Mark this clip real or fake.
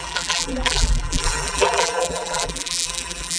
fake